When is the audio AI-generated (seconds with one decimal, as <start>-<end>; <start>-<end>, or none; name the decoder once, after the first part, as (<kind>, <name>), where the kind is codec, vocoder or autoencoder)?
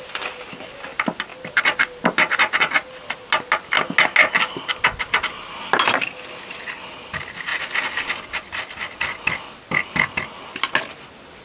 none